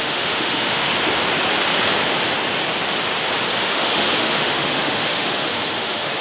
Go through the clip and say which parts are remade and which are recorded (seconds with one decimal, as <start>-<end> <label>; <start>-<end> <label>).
0.0-0.9 remade; 0.9-3.6 recorded; 3.6-6.2 remade